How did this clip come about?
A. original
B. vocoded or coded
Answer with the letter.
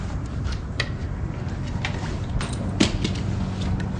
A